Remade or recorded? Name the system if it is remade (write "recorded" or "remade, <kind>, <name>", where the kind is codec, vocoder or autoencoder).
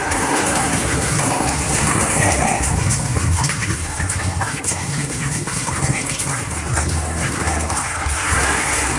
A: remade, codec, SNAC